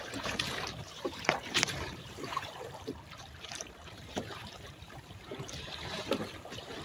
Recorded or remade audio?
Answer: remade